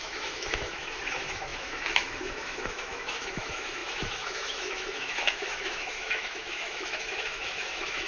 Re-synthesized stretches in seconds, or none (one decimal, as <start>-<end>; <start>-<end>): 0.0-8.1